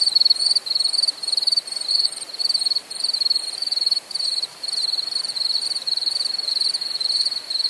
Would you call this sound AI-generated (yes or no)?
yes